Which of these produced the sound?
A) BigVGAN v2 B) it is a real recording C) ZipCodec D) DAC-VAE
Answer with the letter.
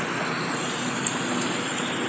B